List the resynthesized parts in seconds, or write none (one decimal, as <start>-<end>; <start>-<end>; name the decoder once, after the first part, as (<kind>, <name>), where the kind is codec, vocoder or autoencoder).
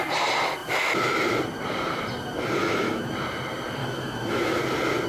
2.6-3.1 (autoencoder, DAC-VAE); 3.8-4.6